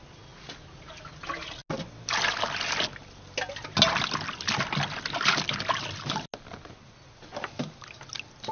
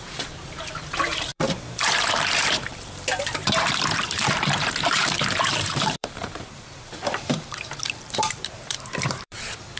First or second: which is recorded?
first